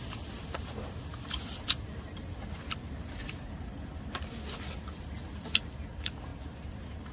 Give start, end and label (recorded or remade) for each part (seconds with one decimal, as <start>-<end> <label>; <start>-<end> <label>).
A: 0.0-3.2 recorded; 3.2-3.7 remade; 3.7-6.3 recorded; 6.3-7.1 remade